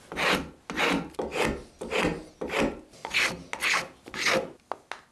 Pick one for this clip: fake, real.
real